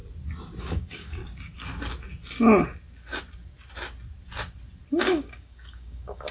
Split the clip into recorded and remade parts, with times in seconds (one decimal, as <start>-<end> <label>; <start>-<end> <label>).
0.0-0.6 recorded; 0.6-1.2 remade; 1.2-5.0 recorded; 5.0-6.3 remade